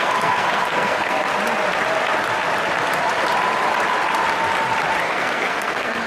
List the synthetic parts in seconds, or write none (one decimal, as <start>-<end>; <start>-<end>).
0.0-1.3; 5.0-6.1